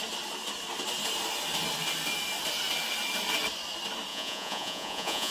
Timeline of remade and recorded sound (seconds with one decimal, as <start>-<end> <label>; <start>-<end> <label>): 0.0-4.1 recorded; 4.1-5.3 remade